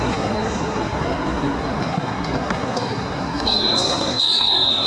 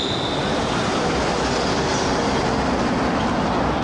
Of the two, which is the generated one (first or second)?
first